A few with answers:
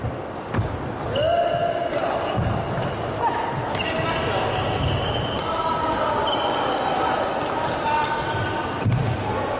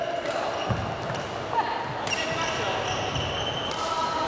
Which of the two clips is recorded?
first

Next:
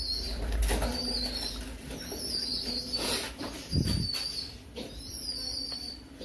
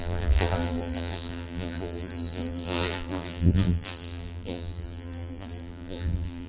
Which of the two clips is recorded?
first